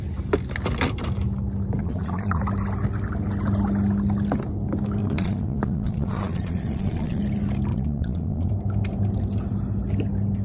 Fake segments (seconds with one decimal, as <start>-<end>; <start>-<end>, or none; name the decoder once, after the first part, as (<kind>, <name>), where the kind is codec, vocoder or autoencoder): 1.8-2.4 (vocoder, Vocos); 5.0-7.2; 7.7-8.5